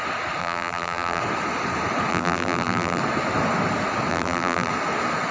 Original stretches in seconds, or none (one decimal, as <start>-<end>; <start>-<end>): 0.0-0.4; 1.2-2.1; 3.0-4.1; 4.7-5.3

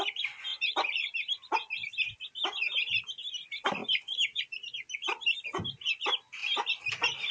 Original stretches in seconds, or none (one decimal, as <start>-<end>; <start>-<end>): 0.0-0.5; 1.4-7.3